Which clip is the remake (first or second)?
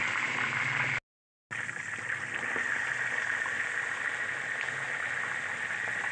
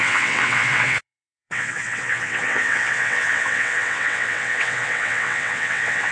second